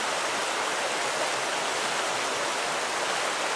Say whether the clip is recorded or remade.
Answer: recorded